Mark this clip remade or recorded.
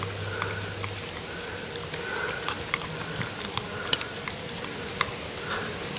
recorded